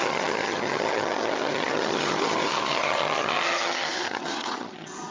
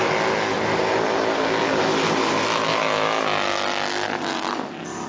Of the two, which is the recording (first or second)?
second